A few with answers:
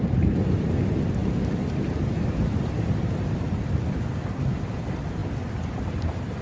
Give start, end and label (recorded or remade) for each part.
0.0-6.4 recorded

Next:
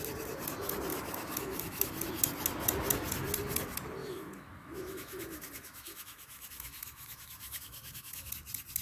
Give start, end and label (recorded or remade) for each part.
0.0-0.9 recorded; 0.9-1.9 remade; 1.9-4.0 recorded; 4.0-8.3 remade; 8.3-8.8 recorded

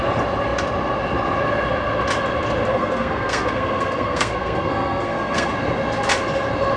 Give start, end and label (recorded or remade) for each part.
0.0-2.7 recorded; 2.7-5.5 remade; 5.5-6.8 recorded

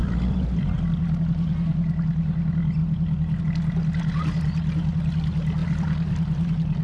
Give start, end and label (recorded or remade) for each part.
0.0-1.3 remade; 1.3-5.6 recorded; 5.6-6.8 remade

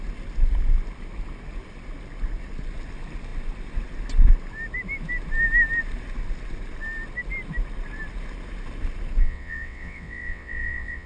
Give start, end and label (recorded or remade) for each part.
0.0-9.2 recorded; 9.2-11.1 remade